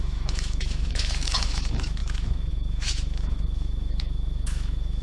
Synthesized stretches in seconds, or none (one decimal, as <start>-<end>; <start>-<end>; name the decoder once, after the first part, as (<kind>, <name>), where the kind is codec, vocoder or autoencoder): 0.0-5.0 (autoencoder, DAC-VAE)